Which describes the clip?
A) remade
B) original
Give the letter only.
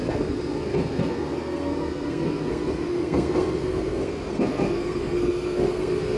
A